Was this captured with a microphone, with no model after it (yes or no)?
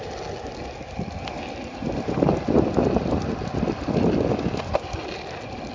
yes